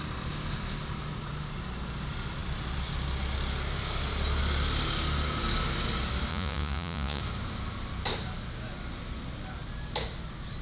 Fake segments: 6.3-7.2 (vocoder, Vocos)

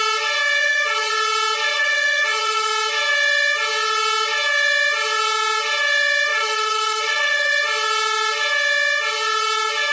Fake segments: 0.6-1.1 (vocoder, Vocos); 1.7-2.7; 6.3-7.5

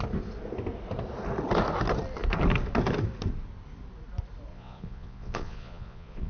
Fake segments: 4.5-6.3 (vocoder, Vocos)

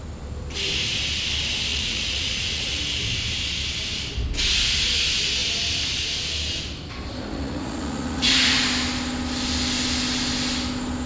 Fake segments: 1.7-2.8 (vocoder, Vocos); 7.3-8.6